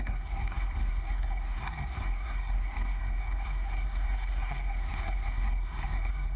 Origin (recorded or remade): remade